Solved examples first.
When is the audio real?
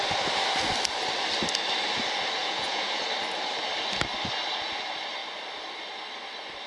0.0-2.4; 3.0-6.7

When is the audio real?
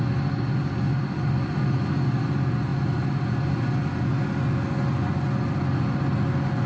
0.0-6.7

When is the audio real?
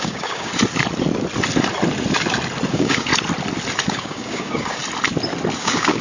0.5-2.7; 3.1-3.9; 4.8-5.6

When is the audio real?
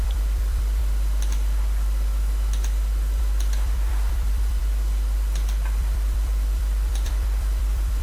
0.8-3.2; 4.6-5.8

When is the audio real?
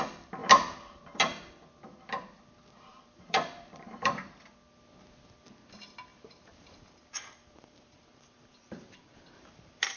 0.0-2.9; 4.4-6.1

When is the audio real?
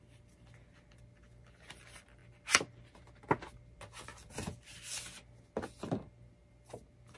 0.0-7.2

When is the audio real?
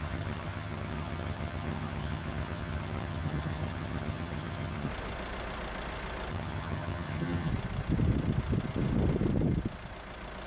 4.9-6.3; 7.5-10.5